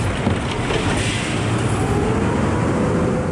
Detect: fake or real real